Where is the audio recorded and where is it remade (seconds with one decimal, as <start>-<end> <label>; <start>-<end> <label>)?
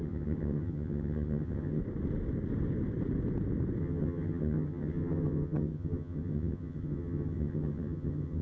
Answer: 0.0-1.8 remade; 1.8-3.8 recorded; 3.8-8.4 remade